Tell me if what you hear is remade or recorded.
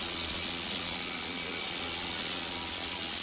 remade